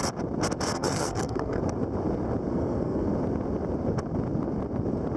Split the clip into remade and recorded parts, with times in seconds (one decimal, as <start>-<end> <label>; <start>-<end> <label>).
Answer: 0.0-0.7 recorded; 0.7-1.6 remade; 1.6-2.5 recorded; 2.5-3.1 remade; 3.1-5.2 recorded